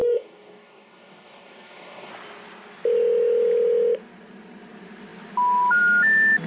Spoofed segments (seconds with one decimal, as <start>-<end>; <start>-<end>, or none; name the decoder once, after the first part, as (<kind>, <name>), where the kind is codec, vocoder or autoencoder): 0.0-2.1 (codec, DAC)